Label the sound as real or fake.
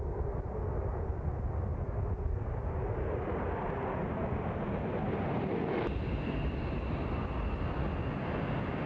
real